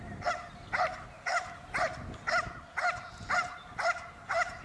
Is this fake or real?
real